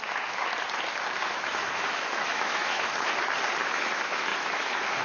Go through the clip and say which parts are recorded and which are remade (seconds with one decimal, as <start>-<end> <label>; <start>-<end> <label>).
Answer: 0.0-0.5 remade; 0.5-1.2 recorded; 1.2-2.9 remade; 2.9-3.6 recorded; 3.6-5.0 remade